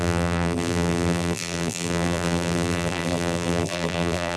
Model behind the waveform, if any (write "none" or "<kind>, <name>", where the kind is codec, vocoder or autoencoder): vocoder, BigVGAN v2